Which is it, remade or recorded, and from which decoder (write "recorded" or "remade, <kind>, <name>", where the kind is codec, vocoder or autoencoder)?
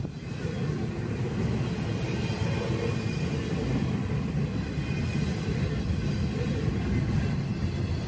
recorded